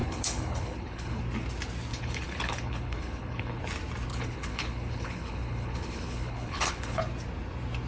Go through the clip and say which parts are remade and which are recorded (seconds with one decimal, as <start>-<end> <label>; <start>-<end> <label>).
0.0-1.2 remade; 1.2-1.9 recorded; 1.9-3.6 remade; 3.6-4.1 recorded; 4.1-7.0 remade; 7.0-7.9 recorded